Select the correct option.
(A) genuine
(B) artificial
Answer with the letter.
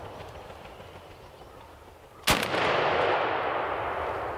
A